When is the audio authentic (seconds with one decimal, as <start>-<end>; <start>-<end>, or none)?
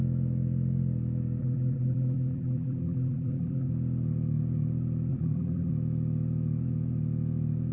0.0-1.4; 3.7-5.1; 5.7-7.7